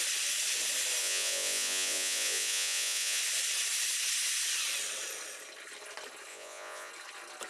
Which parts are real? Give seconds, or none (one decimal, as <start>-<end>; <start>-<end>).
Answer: 0.0-1.0; 3.2-6.3; 6.9-7.5